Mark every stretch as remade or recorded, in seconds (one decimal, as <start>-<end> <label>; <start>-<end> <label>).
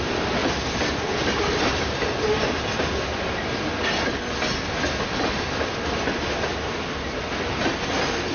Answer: 0.0-8.3 recorded